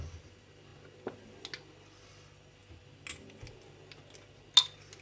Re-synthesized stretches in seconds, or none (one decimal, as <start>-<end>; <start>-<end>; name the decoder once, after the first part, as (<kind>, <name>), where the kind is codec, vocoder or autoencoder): none